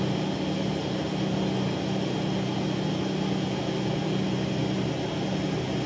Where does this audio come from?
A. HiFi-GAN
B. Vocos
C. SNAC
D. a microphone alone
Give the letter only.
D